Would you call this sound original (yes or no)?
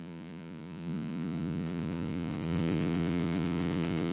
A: no